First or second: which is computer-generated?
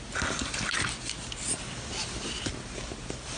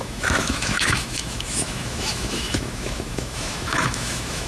second